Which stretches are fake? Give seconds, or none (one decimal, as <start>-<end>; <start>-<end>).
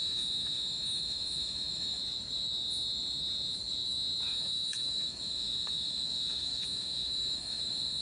0.0-2.0; 4.3-8.0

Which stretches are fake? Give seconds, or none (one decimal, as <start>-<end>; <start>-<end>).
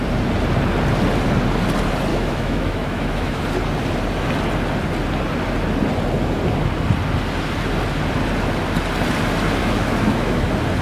2.1-3.4; 9.6-10.4